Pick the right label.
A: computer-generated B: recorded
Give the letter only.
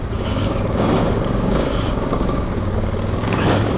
A